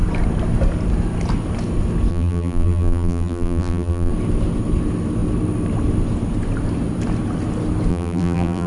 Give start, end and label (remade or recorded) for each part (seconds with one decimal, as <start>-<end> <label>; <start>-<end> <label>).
0.0-2.1 recorded; 2.1-4.1 remade; 4.1-7.9 recorded; 7.9-8.7 remade